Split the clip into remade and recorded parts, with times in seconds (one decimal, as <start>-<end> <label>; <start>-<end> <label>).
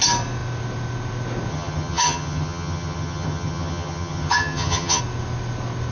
0.0-1.5 recorded; 1.5-5.0 remade; 5.0-5.9 recorded